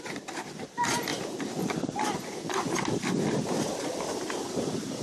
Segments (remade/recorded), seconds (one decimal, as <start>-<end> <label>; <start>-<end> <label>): 0.0-5.0 recorded